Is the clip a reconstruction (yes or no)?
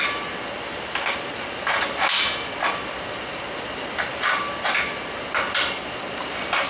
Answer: no